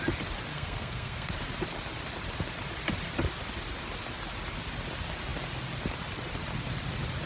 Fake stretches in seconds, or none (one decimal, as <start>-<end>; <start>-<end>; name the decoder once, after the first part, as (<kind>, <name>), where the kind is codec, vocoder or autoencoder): 0.5-1.3 (codec, SNAC)